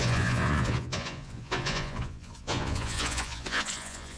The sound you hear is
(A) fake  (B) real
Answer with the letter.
A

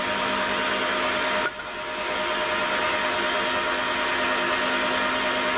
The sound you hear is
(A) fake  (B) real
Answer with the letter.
B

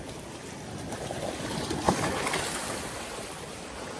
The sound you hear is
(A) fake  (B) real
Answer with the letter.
B